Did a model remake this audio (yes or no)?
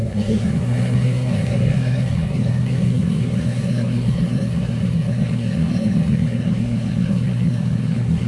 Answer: yes